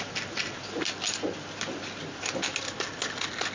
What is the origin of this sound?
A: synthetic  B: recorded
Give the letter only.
B